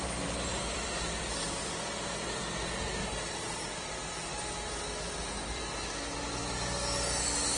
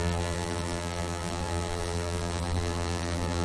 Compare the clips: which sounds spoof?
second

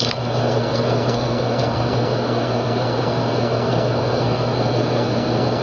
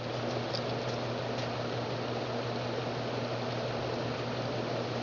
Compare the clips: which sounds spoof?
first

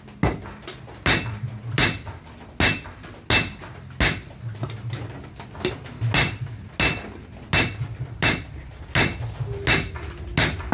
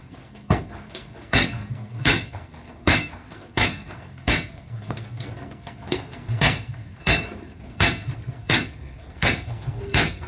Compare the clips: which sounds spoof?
second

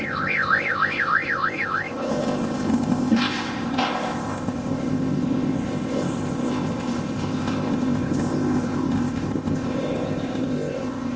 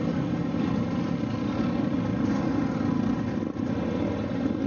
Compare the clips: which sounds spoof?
first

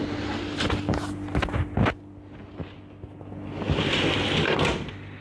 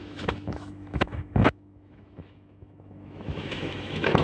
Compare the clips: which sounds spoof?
second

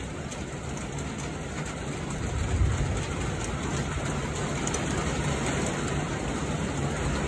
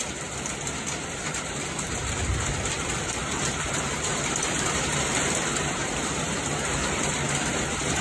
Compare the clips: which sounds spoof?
second